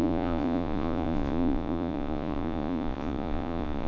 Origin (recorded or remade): remade